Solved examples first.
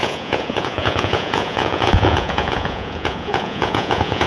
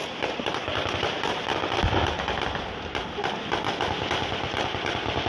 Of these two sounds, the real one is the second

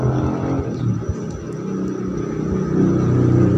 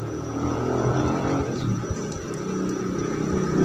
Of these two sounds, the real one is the first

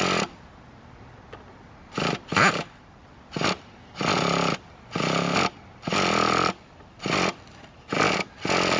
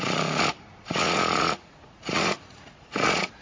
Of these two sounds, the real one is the first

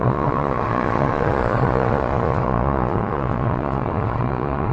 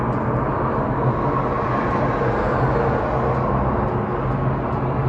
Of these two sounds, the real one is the second